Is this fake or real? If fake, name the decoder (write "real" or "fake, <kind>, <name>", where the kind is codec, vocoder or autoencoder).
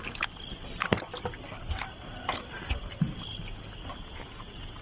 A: real